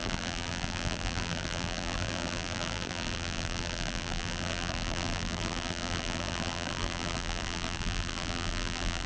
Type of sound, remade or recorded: remade